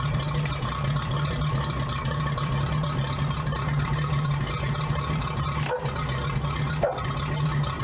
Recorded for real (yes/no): no